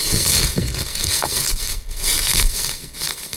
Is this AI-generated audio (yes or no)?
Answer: yes